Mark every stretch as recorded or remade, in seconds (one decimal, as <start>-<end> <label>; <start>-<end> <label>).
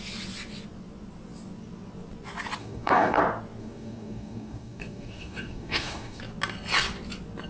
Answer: 0.0-2.6 recorded; 2.6-3.2 remade; 3.2-3.6 recorded; 3.6-6.2 remade; 6.2-7.5 recorded